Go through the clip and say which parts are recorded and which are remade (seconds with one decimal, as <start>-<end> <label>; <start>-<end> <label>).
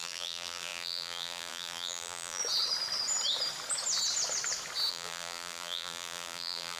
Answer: 0.0-2.4 remade; 2.4-4.9 recorded; 4.9-6.8 remade